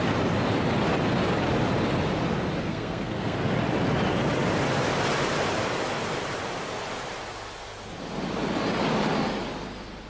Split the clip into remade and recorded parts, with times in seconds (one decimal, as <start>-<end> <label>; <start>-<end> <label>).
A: 0.0-2.6 recorded; 2.6-3.4 remade; 3.4-10.1 recorded

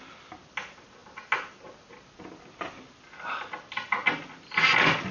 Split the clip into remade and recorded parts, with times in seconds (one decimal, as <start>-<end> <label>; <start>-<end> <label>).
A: 0.0-5.1 recorded